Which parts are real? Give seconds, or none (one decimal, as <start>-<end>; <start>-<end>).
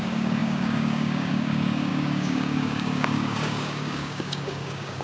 none